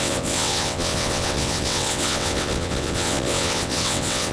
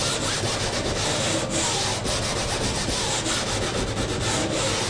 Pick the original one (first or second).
second